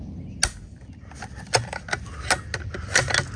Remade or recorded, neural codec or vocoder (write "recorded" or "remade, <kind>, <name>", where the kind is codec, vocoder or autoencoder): recorded